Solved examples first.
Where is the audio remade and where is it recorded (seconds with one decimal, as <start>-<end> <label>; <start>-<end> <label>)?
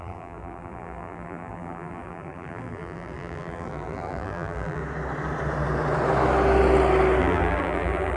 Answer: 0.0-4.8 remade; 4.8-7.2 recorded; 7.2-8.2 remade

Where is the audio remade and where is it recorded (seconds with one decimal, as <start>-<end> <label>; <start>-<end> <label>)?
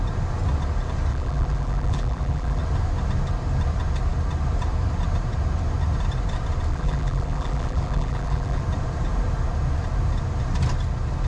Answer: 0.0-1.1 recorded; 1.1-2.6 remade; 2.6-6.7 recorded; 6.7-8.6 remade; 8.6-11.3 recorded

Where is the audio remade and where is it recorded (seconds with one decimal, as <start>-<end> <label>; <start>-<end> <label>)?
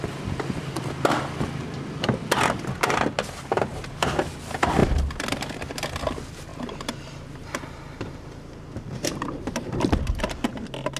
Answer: 0.0-6.5 recorded; 6.5-10.5 remade; 10.5-11.0 recorded